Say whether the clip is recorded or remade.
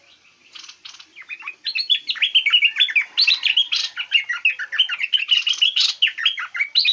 recorded